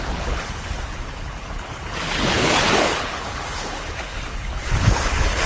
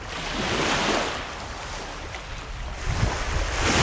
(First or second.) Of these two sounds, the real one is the second